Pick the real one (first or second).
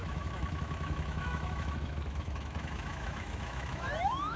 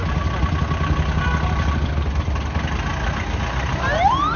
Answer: second